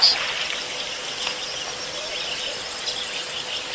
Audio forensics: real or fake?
real